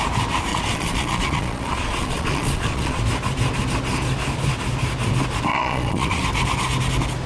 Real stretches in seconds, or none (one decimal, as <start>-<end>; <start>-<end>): 0.0-0.5; 3.0-5.5; 6.2-7.3